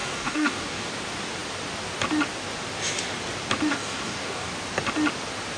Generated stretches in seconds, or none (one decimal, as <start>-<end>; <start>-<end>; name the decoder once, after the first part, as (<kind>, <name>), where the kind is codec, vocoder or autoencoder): 0.0-0.9 (codec, DAC); 3.7-4.5